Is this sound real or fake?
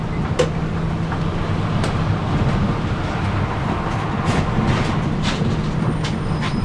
real